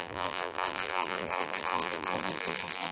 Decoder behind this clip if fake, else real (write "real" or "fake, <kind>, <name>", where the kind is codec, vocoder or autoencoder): fake, vocoder, BigVGAN v2